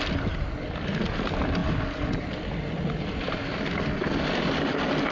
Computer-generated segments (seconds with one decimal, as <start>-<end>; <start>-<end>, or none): none